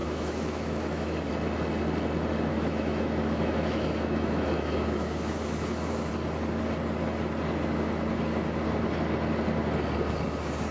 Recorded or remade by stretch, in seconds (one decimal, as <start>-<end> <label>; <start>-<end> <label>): 0.0-1.3 remade; 1.3-2.5 recorded; 2.5-6.1 remade; 6.1-10.7 recorded